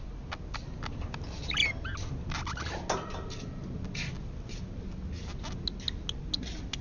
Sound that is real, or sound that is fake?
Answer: real